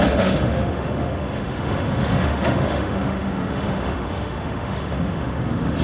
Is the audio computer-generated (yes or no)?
yes